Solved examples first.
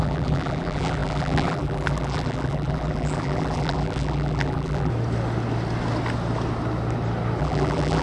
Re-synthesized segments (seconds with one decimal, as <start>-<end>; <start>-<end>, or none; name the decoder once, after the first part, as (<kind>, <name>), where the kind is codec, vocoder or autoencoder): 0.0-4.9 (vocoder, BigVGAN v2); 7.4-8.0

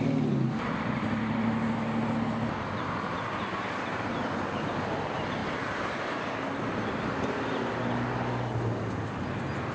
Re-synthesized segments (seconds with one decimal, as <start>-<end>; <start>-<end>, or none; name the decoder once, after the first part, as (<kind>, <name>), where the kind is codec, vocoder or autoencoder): none

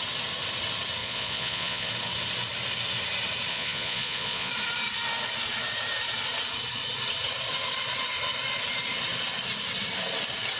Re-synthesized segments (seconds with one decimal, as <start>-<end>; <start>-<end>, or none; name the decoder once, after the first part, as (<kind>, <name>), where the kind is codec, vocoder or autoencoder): 1.0-1.9 (vocoder, Vocos); 3.5-4.5

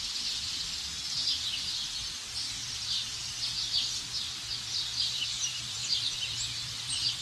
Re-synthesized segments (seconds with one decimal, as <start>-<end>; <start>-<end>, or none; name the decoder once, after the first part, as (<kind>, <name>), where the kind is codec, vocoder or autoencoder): 0.0-0.9 (vocoder, BigVGAN v2); 5.1-7.2